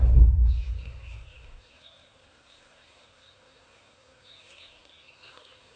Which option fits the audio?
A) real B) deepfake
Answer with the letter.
B